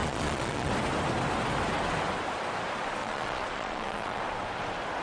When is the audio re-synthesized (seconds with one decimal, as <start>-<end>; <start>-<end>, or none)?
0.0-0.7; 3.0-4.2